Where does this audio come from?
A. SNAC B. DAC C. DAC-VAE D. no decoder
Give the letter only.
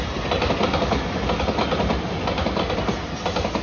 D